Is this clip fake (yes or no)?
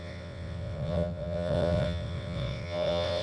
yes